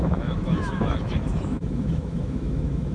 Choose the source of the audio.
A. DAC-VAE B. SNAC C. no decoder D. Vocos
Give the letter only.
A